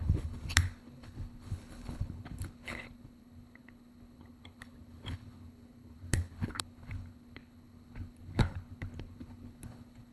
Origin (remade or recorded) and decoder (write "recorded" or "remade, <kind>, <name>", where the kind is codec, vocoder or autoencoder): remade, codec, HILCodec